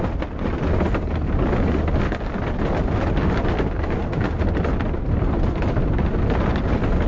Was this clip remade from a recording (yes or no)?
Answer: no